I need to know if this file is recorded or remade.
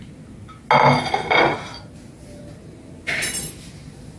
recorded